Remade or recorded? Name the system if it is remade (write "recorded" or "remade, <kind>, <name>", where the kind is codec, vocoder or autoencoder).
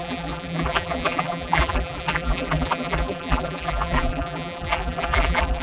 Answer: remade, vocoder, BigVGAN v2